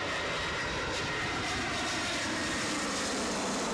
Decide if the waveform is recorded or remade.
recorded